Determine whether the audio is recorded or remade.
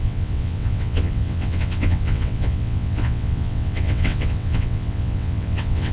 remade